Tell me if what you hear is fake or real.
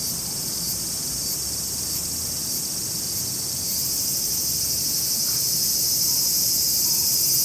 real